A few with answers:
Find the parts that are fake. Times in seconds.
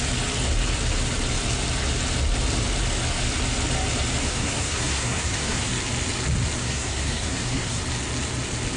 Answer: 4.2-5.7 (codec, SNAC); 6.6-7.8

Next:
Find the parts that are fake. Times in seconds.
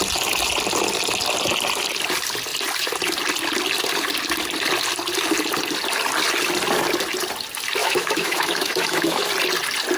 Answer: 7.8-9.3 (autoencoder, DAC-VAE)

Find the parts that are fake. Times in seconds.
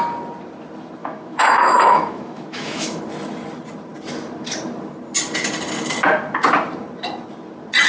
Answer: 1.0-3.0 (autoencoder, DAC-VAE)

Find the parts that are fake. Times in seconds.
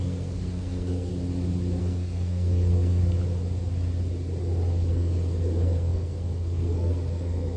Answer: 0.0-1.1 (codec, SNAC); 1.8-3.0; 4.9-7.6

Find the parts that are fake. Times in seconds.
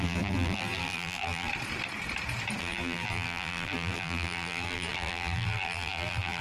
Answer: 0.0-1.5 (vocoder, BigVGAN v2); 2.6-6.4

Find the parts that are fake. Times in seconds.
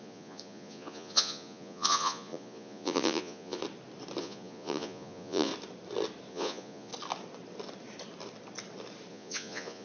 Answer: 0.0-3.6 (vocoder, Vocos); 4.2-5.5; 6.3-6.9; 9.1-9.8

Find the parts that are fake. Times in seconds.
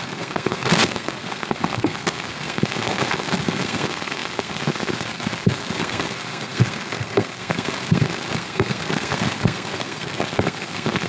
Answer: 0.0-11.1 (codec, SNAC)